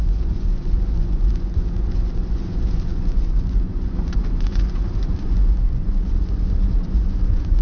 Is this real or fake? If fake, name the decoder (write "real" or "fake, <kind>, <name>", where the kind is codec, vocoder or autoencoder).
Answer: fake, vocoder, Vocos